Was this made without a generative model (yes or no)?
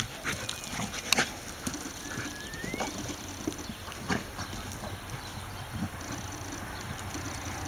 yes